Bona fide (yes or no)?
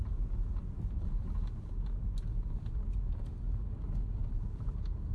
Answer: yes